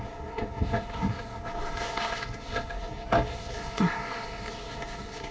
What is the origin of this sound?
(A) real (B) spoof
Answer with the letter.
B